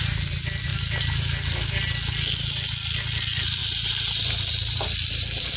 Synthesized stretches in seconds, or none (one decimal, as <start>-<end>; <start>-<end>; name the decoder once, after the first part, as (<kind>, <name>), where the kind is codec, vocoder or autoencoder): 3.6-5.6 (vocoder, BigVGAN v2)